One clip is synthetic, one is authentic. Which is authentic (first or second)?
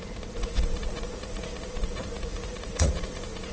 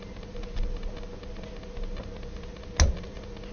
second